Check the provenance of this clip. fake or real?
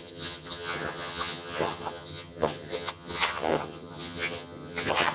fake